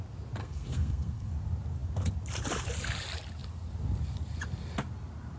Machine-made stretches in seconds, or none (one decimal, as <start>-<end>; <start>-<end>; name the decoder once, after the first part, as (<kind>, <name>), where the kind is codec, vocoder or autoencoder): 0.4-1.3 (codec, SNAC)